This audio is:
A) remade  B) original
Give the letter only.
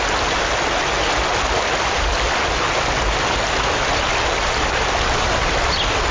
B